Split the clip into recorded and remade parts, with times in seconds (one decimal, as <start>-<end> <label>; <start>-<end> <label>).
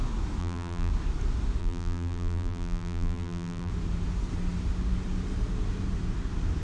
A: 0.0-0.4 recorded; 0.4-0.9 remade; 0.9-1.6 recorded; 1.6-3.7 remade; 3.7-6.6 recorded